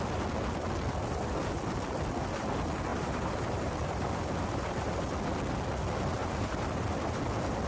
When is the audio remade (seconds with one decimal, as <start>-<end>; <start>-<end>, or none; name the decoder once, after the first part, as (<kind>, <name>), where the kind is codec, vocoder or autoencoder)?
2.9-5.0 (vocoder, BigVGAN v2); 6.2-7.2